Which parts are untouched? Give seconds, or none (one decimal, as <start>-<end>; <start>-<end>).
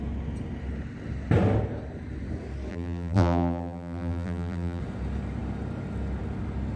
0.0-2.7; 4.8-6.8